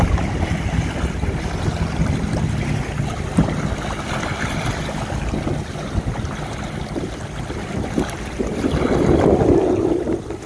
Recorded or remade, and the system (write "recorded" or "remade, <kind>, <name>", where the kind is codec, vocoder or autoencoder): recorded